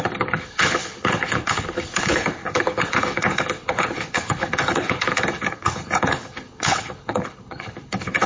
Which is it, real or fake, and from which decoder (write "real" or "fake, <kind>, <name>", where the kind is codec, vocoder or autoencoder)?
fake, codec, HILCodec